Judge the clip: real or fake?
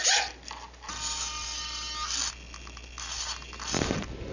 real